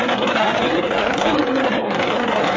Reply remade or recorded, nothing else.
remade